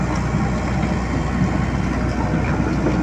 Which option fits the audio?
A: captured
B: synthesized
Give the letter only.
A